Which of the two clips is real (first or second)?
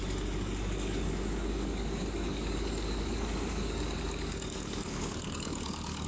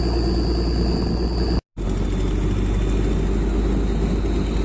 second